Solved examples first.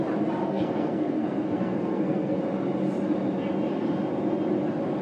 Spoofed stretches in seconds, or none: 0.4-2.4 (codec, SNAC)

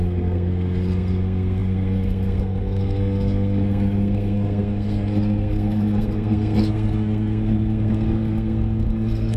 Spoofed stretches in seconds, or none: 0.0-9.4 (codec, SNAC)

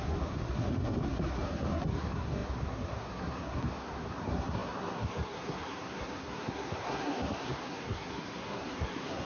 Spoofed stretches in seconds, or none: 0.0-9.2 (codec, SNAC)

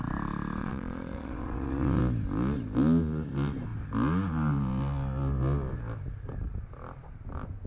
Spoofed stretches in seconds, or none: 0.6-2.0 (vocoder, WaveNeXt)